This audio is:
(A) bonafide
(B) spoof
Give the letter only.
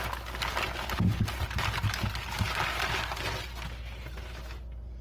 A